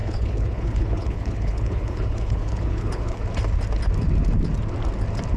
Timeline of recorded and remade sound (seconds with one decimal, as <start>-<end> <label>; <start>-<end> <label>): 0.0-3.2 remade; 3.2-5.4 recorded